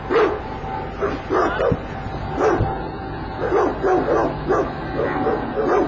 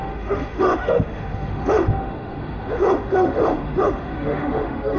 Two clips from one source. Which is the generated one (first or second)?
second